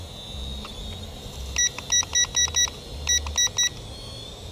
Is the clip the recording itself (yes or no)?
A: yes